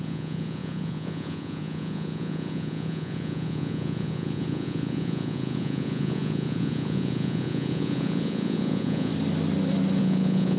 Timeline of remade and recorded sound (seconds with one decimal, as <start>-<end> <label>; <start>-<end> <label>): 0.0-9.1 remade; 9.1-10.0 recorded; 10.0-10.6 remade